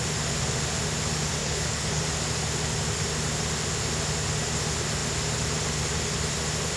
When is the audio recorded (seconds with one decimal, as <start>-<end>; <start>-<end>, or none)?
0.0-1.4; 2.0-6.8